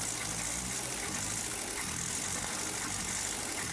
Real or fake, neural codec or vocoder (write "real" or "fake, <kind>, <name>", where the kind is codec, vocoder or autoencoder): real